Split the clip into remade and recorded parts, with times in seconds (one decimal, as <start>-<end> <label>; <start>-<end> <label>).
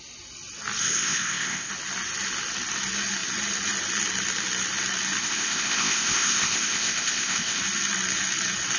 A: 0.0-0.8 recorded; 0.8-1.7 remade; 1.7-5.2 recorded; 5.2-7.6 remade; 7.6-8.8 recorded